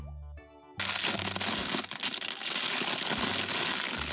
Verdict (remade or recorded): recorded